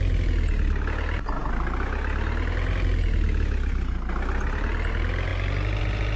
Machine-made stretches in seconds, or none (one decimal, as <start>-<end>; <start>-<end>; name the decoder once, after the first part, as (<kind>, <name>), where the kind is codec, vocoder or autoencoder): none